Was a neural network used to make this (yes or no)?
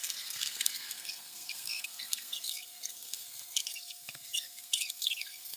yes